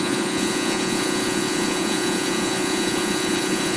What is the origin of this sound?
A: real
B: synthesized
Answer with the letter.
B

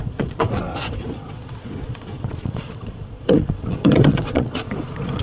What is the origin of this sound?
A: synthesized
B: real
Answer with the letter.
A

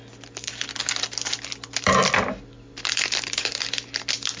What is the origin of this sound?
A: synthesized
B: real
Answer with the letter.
B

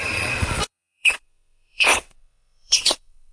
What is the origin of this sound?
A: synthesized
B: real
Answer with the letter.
A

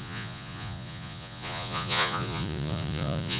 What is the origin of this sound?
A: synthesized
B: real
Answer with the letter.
A